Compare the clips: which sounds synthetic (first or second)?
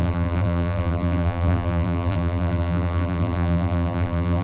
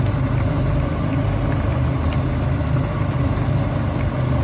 first